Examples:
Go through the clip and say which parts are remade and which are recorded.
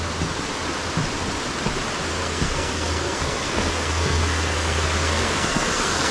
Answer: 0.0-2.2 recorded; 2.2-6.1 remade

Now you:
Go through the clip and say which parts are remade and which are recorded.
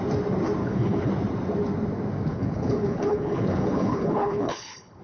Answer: 0.0-0.6 recorded; 0.6-1.1 remade; 1.1-2.3 recorded; 2.3-5.0 remade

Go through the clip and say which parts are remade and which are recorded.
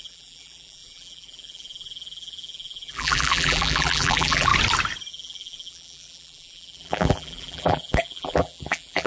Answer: 0.0-4.5 remade; 4.5-5.1 recorded; 5.1-9.1 remade